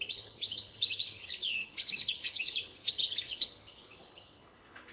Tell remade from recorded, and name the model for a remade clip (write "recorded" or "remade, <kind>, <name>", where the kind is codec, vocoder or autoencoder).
remade, codec, HILCodec